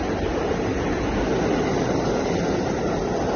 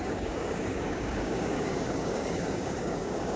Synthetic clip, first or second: second